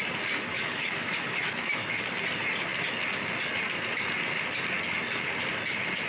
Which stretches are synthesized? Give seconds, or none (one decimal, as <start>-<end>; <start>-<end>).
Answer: 0.5-1.9